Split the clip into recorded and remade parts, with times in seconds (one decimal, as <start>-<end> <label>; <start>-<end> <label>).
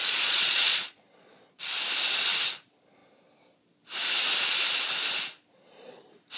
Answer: 0.0-1.6 remade; 1.6-6.4 recorded